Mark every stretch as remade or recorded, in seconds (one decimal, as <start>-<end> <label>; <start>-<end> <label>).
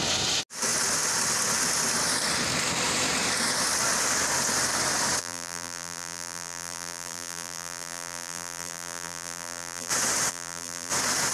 0.0-5.2 recorded; 5.2-9.9 remade; 9.9-10.3 recorded; 10.3-10.9 remade; 10.9-11.3 recorded